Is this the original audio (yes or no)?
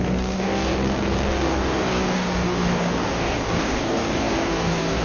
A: no